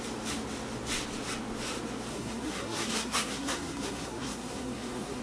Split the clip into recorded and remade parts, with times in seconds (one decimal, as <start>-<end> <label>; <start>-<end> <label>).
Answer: 0.0-2.1 recorded; 2.1-5.2 remade